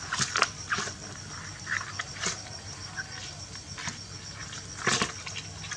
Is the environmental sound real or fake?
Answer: real